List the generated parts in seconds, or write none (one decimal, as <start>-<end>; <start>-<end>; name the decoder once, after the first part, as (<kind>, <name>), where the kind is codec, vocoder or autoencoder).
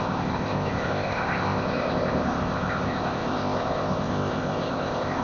0.0-5.2 (codec, ZipCodec)